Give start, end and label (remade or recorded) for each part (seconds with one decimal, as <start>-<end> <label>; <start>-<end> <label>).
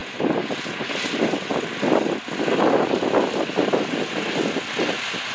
0.0-5.3 recorded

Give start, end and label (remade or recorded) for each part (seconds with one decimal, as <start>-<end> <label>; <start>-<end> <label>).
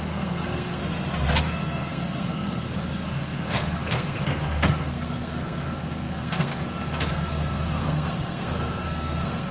0.0-0.8 remade; 0.8-1.4 recorded; 1.4-6.5 remade; 6.5-7.1 recorded; 7.1-9.5 remade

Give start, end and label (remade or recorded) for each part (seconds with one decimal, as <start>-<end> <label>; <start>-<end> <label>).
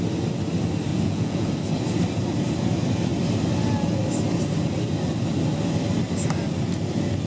0.0-0.9 recorded; 0.9-1.5 remade; 1.5-7.3 recorded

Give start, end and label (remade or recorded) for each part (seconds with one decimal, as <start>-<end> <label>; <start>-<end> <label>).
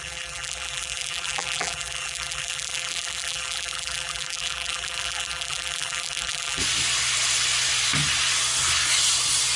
0.0-6.6 remade; 6.6-9.6 recorded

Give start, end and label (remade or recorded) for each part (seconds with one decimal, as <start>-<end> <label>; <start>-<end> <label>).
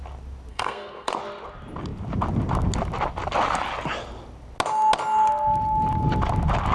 0.0-0.5 recorded; 0.5-1.1 remade; 1.1-6.7 recorded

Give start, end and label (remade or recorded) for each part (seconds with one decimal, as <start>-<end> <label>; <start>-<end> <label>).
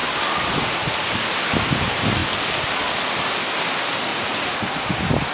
0.0-4.1 recorded; 4.1-4.8 remade; 4.8-5.3 recorded